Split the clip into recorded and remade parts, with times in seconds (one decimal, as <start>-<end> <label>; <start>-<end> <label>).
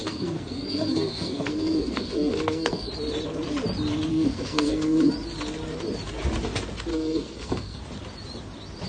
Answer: 0.0-2.9 remade; 2.9-4.1 recorded; 4.1-5.1 remade; 5.1-6.9 recorded; 6.9-7.8 remade; 7.8-8.9 recorded